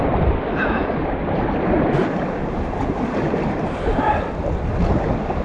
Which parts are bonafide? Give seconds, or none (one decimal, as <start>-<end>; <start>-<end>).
0.0-5.4